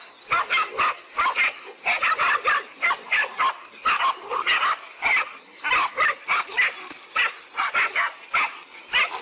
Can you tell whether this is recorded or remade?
recorded